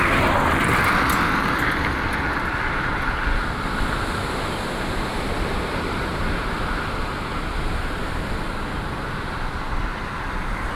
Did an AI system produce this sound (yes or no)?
no